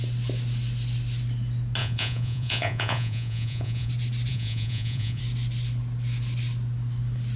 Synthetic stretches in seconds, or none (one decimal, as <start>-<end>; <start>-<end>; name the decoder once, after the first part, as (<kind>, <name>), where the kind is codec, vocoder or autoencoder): 1.8-3.9 (vocoder, Vocos); 4.3-5.2